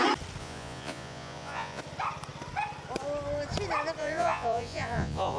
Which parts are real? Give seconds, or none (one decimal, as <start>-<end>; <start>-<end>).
0.0-0.4; 1.8-4.0